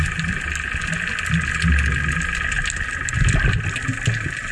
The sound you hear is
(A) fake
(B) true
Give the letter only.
B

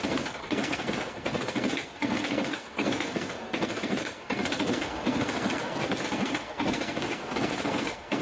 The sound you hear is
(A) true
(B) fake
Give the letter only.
B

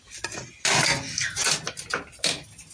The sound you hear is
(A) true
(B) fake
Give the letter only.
A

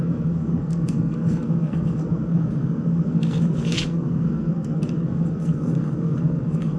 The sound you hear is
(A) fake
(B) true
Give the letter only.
A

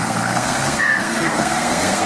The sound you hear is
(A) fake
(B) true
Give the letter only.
A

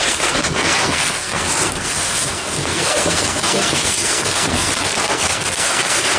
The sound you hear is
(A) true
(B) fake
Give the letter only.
B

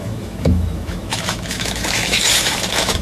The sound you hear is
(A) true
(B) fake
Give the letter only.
B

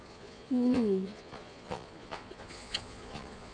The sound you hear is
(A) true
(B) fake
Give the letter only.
B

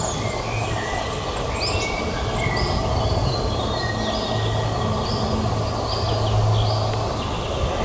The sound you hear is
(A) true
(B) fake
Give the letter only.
A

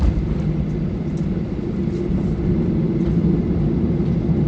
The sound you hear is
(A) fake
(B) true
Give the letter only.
B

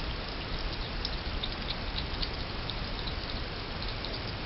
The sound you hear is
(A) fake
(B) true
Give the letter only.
B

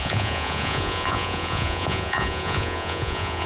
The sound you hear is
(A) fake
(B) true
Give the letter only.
A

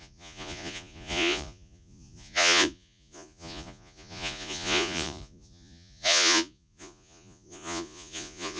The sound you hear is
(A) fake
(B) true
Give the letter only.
A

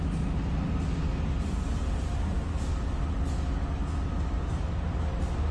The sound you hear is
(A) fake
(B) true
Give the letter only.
B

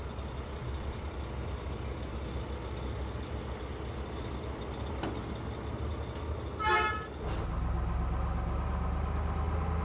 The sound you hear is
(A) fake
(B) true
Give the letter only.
B